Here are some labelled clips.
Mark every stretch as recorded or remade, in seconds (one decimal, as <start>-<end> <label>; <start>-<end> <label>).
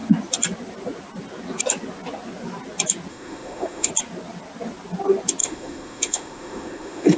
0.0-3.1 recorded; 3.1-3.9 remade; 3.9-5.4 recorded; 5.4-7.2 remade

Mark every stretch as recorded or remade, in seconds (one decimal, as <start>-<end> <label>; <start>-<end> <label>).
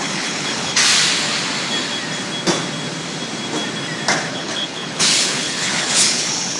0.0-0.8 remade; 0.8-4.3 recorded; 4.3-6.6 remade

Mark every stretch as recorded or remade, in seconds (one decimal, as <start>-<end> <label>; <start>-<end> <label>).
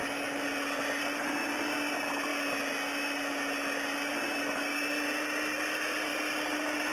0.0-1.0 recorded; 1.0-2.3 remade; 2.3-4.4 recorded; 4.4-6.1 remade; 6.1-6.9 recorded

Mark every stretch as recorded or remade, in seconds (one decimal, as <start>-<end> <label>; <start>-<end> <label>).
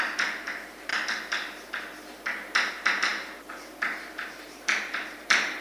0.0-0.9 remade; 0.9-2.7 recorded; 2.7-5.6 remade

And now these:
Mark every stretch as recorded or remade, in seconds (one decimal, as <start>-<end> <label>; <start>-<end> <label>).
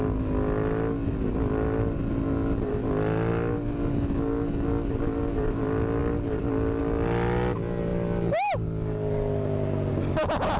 0.0-10.6 recorded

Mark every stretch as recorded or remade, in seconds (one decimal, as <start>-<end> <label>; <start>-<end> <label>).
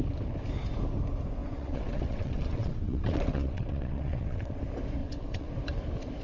0.0-1.4 recorded; 1.4-4.6 remade; 4.6-5.0 recorded; 5.0-5.5 remade; 5.5-6.2 recorded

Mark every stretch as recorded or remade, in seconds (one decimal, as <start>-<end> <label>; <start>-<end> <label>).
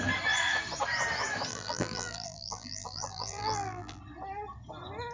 0.0-1.5 recorded; 1.5-4.0 remade; 4.0-5.1 recorded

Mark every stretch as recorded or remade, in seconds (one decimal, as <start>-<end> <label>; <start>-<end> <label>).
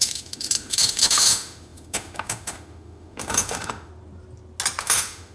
0.0-3.9 remade; 3.9-4.8 recorded; 4.8-5.3 remade